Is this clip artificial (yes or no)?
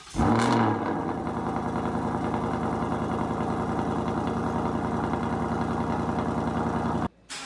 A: no